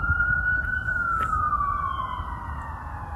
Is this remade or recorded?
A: recorded